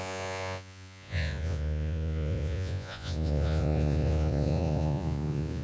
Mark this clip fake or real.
fake